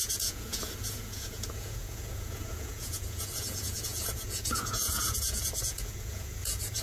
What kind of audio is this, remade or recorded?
remade